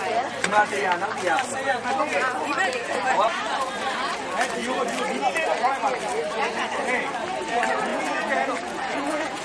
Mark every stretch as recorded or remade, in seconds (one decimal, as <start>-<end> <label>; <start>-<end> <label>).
0.0-2.8 recorded; 2.8-3.4 remade; 3.4-7.9 recorded; 7.9-9.4 remade